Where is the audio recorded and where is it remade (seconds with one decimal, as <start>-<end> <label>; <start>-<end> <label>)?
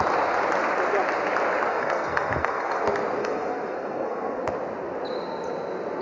0.0-1.7 recorded; 1.7-2.8 remade; 2.8-3.2 recorded; 3.2-4.4 remade; 4.4-6.0 recorded